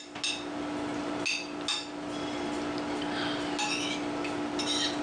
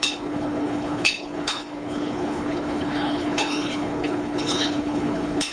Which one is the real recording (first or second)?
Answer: first